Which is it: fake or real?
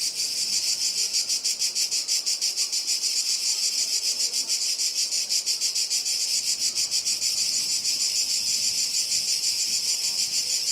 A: real